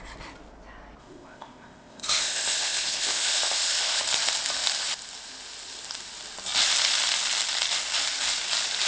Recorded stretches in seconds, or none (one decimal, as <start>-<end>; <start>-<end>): 0.0-1.0; 4.0-8.9